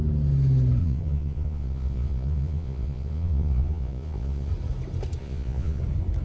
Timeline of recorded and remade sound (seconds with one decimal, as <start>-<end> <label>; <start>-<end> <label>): 0.0-0.8 recorded; 0.8-4.5 remade; 4.5-5.2 recorded; 5.2-5.8 remade; 5.8-6.2 recorded